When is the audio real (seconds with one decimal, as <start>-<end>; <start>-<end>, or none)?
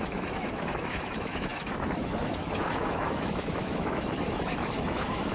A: none